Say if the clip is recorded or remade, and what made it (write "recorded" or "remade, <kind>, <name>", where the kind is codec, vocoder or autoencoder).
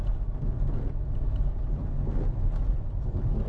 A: recorded